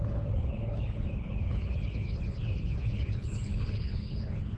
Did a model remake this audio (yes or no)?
yes